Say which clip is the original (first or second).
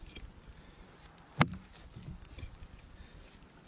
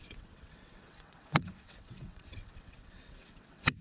first